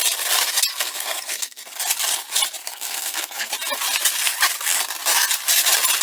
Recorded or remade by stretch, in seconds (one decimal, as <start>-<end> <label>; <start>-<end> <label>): 0.0-0.7 recorded; 0.7-1.6 remade; 1.6-2.6 recorded; 2.6-3.5 remade; 3.5-6.0 recorded

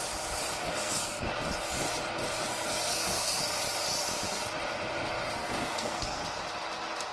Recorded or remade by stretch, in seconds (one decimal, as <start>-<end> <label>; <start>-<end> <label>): 0.0-0.6 recorded; 0.6-1.3 remade; 1.3-2.5 recorded; 2.5-3.4 remade; 3.4-5.4 recorded; 5.4-6.2 remade; 6.2-7.1 recorded

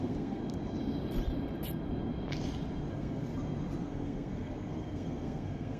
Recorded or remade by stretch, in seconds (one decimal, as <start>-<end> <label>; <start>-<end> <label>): 0.0-0.4 remade; 0.4-2.9 recorded; 2.9-3.3 remade; 3.3-3.8 recorded; 3.8-5.8 remade

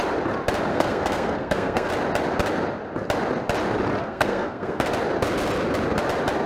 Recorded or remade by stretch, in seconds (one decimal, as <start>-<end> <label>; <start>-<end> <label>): 0.0-0.7 recorded; 0.7-1.9 remade; 1.9-4.0 recorded; 4.0-4.9 remade; 4.9-6.5 recorded

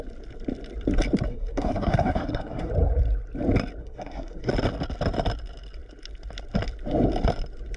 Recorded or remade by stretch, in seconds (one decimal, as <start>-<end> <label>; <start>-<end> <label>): 0.0-1.3 recorded; 1.3-2.7 remade; 2.7-3.8 recorded; 3.8-4.5 remade; 4.5-7.8 recorded

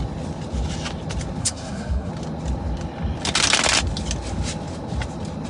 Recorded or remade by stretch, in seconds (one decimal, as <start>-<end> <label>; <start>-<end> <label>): 0.0-1.4 recorded; 1.4-2.1 remade; 2.1-5.5 recorded